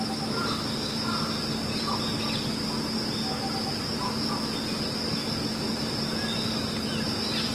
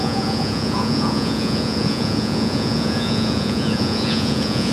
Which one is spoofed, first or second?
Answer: second